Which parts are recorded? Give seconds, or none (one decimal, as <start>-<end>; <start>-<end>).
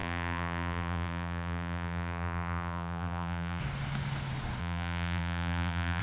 3.6-4.6